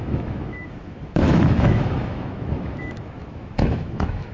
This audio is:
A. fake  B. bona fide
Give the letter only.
A